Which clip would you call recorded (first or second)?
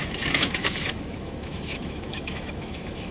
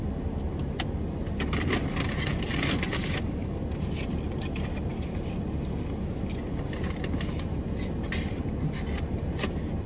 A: second